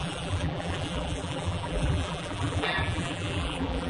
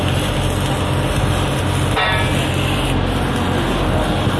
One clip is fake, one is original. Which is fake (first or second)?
first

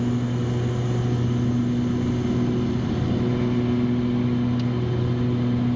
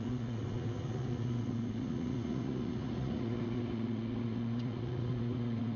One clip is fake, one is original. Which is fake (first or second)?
second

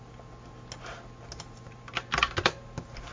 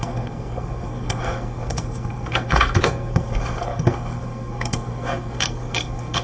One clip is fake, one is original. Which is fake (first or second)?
second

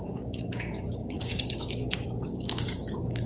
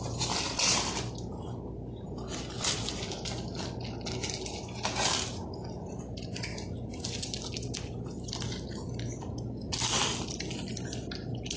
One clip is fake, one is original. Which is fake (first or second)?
first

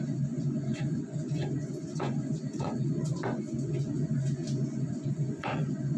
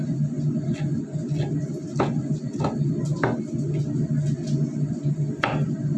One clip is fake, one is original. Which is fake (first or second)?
first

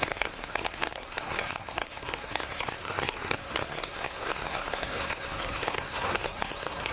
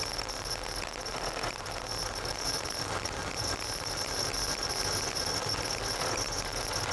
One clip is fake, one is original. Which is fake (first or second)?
first